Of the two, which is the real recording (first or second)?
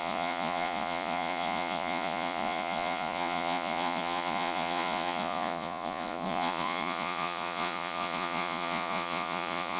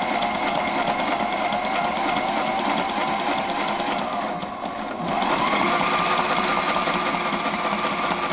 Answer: second